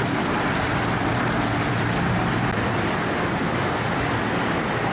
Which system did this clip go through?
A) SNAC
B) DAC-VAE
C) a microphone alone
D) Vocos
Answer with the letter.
C